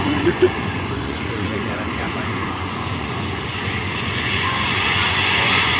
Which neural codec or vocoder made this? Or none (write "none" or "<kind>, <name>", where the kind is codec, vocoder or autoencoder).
vocoder, Vocos